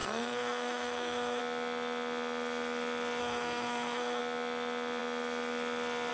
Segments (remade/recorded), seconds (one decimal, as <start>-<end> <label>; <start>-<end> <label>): 0.0-1.4 remade; 1.4-3.2 recorded; 3.2-4.2 remade; 4.2-6.1 recorded